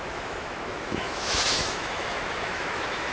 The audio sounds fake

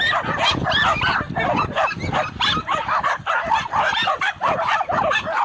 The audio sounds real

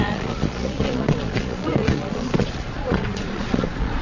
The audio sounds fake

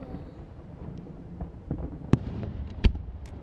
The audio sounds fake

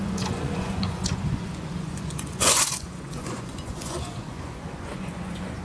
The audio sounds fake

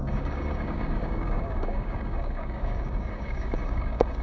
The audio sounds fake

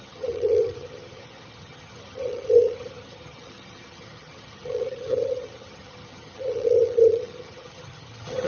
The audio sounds fake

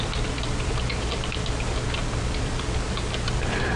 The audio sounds real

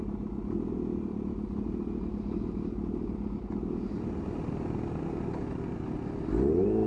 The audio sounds real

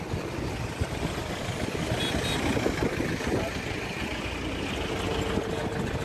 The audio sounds real